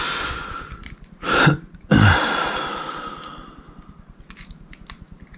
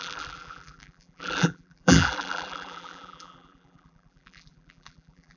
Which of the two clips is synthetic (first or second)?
second